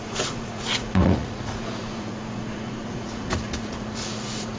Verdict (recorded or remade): remade